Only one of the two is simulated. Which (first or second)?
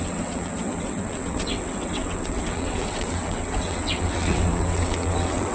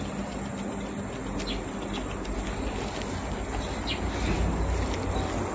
first